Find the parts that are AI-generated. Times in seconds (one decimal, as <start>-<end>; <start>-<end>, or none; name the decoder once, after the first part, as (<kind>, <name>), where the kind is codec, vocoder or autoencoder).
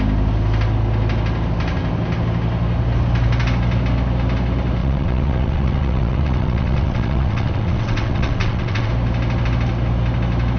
4.8-8.9 (vocoder, WaveNeXt)